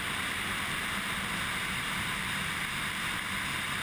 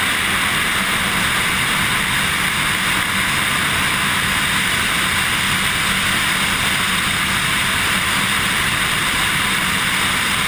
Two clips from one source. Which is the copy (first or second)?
first